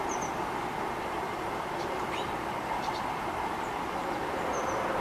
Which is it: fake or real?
real